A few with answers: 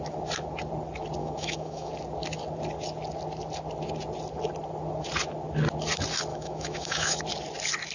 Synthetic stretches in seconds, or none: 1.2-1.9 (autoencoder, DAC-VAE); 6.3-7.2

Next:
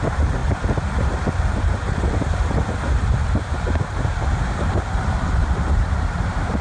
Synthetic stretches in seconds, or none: 0.0-0.4 (vocoder, BigVGAN v2); 4.4-6.6

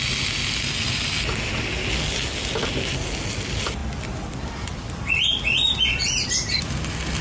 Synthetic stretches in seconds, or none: 3.8-6.7 (vocoder, BigVGAN v2)

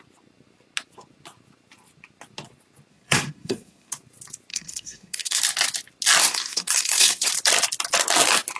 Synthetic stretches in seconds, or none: 2.9-3.9 (codec, SNAC); 4.5-5.4; 6.2-7.3

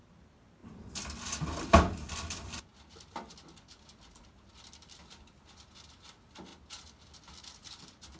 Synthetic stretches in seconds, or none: none